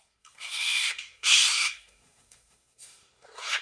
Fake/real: fake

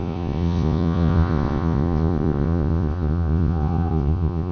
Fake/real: fake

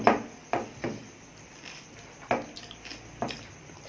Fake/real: real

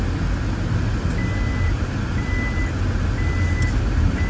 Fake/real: real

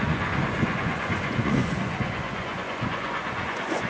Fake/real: fake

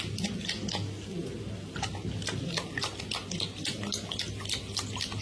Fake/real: real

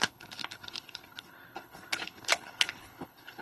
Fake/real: fake